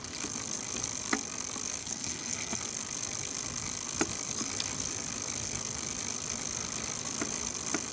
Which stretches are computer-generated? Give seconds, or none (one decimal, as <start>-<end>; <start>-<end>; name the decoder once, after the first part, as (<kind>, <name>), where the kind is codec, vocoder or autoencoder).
1.8-2.6 (codec, SNAC)